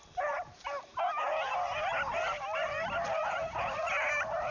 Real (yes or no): yes